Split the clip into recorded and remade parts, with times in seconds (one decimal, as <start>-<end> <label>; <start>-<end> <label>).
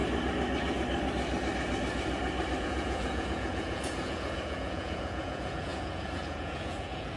0.0-2.6 recorded; 2.6-7.2 remade